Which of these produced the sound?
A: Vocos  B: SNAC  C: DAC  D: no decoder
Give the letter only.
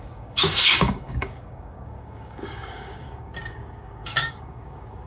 C